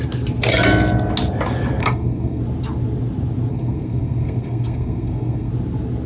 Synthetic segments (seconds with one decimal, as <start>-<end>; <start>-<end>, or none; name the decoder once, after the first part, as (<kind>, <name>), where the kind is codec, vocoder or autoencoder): 1.8-2.4 (codec, SNAC); 3.5-5.5

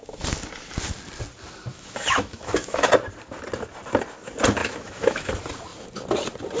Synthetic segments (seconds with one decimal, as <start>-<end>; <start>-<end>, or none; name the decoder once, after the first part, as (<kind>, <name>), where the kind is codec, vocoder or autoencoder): 1.7-2.9 (autoencoder, DAC-VAE); 4.6-5.3

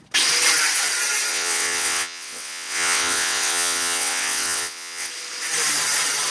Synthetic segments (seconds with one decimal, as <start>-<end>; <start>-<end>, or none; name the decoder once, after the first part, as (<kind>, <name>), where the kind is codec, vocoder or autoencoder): 1.3-5.1 (vocoder, WaveNeXt)